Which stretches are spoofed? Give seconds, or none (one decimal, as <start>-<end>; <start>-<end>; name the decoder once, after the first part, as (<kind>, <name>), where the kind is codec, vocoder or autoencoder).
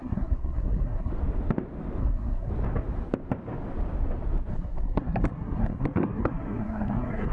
0.0-1.1 (codec, SNAC); 2.0-2.5; 4.5-7.3